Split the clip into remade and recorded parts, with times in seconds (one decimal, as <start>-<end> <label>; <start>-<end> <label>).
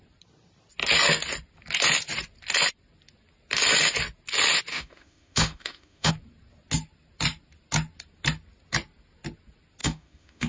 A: 0.0-4.7 recorded; 4.7-6.1 remade; 6.1-9.8 recorded; 9.8-10.5 remade